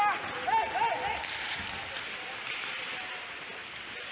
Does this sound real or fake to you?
real